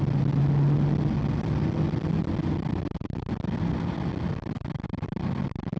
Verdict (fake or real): real